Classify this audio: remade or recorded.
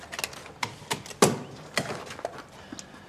recorded